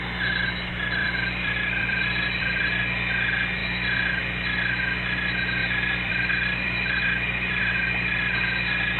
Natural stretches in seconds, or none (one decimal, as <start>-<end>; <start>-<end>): 0.0-1.0; 2.6-5.6; 7.6-9.0